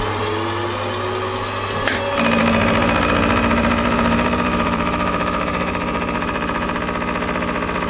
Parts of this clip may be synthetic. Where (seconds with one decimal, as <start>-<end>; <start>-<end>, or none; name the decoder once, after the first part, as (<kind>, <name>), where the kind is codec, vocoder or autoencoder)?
2.4-6.8 (vocoder, BigVGAN v2)